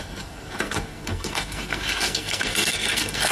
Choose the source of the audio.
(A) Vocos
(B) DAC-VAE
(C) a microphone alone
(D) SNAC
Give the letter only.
D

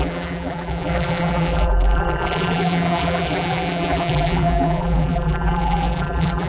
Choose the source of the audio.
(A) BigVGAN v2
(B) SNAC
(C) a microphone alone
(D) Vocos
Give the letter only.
A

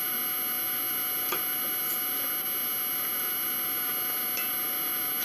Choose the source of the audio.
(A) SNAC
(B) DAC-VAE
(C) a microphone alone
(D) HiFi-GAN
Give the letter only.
C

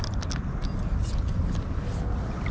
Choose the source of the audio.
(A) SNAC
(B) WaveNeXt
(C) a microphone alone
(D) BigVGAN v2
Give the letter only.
C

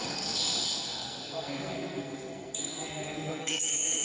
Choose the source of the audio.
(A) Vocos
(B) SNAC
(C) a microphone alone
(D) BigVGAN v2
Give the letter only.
B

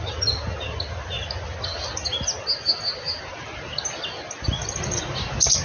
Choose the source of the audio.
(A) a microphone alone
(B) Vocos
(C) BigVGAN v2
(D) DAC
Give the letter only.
A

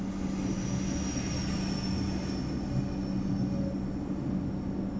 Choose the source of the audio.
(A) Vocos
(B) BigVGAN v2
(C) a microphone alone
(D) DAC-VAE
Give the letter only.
C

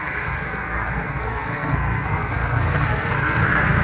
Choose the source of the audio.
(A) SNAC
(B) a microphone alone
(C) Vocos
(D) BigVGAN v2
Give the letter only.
A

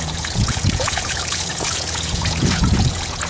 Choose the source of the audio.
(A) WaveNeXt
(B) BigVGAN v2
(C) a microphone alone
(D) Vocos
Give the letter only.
D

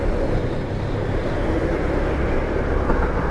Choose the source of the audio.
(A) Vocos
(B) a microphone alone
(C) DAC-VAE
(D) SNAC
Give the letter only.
B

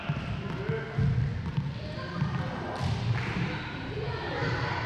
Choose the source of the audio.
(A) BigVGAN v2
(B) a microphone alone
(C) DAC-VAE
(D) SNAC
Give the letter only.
B